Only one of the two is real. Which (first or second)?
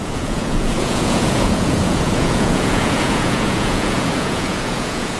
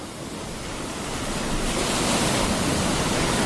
second